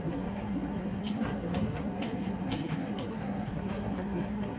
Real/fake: fake